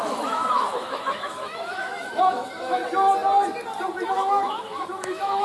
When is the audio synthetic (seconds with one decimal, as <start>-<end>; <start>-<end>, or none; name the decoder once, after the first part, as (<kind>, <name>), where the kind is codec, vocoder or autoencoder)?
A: 0.0-2.8 (autoencoder, DAC-VAE); 4.1-5.4